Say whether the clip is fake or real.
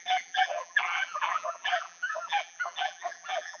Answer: fake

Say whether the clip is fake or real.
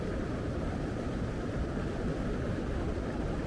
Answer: fake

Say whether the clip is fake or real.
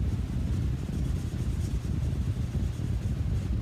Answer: real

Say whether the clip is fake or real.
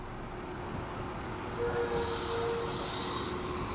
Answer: real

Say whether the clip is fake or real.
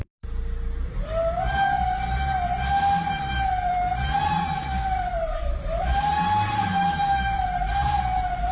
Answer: fake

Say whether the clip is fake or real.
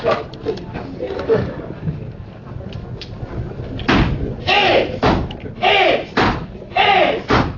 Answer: fake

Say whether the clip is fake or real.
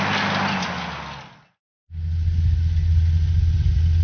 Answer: real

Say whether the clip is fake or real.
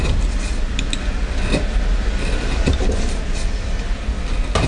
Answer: real